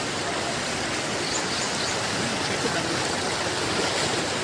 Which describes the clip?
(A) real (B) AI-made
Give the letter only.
A